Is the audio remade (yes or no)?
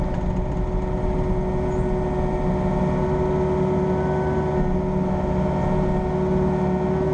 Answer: no